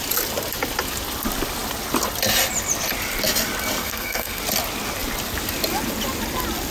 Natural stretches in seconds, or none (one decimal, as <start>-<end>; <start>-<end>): 0.0-3.8; 4.4-6.7